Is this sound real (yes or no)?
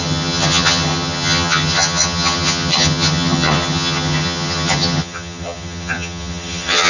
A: no